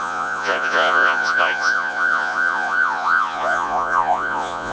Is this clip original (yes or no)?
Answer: no